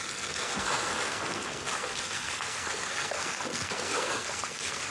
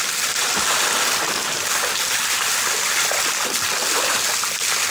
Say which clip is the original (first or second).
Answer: second